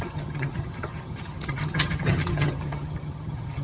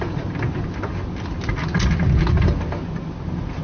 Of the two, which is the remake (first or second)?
first